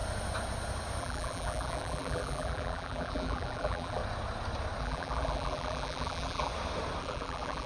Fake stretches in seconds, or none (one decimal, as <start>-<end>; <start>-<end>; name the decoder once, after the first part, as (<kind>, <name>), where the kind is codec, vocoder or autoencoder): 1.0-4.0 (vocoder, BigVGAN v2); 4.8-6.5; 7.0-7.7